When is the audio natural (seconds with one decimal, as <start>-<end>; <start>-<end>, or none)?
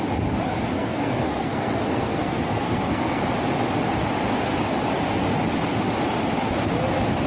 0.0-0.7; 3.2-7.3